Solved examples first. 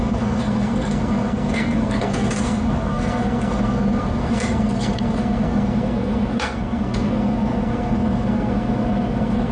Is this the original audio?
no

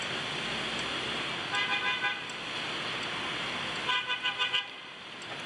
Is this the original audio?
yes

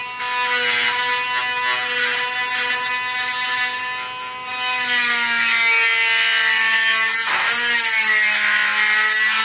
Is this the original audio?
yes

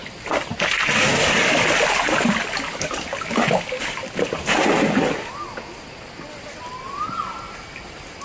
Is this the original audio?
yes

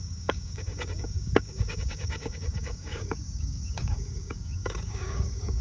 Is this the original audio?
no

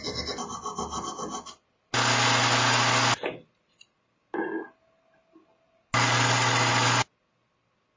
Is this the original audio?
yes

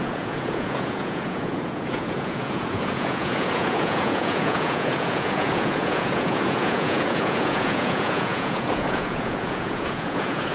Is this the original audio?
no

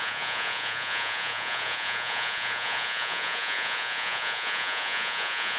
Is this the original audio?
no